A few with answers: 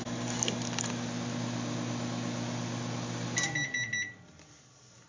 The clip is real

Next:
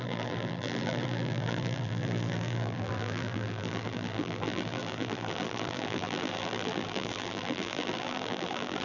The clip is fake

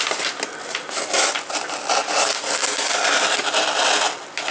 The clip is real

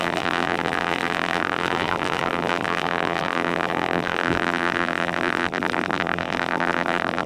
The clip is fake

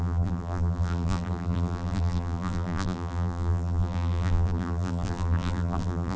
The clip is fake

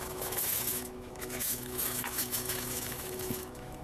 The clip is fake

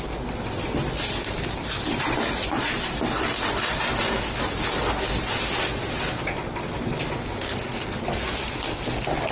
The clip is real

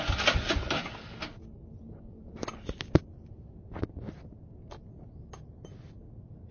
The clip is real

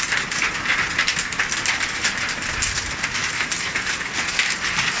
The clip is real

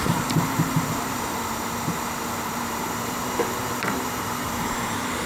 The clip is fake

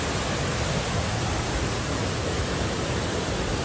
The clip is real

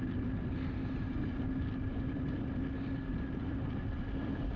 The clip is real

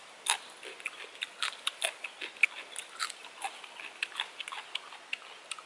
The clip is real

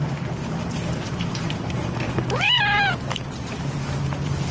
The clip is fake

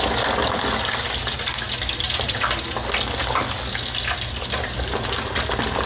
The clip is real